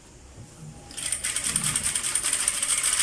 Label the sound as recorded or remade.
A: recorded